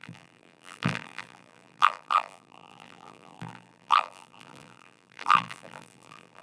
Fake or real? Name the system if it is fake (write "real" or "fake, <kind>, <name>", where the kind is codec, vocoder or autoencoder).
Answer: fake, vocoder, BigVGAN v2